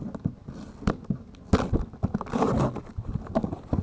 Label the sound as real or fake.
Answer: real